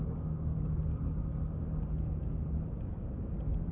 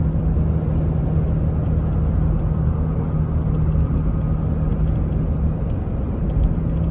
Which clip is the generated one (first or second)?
first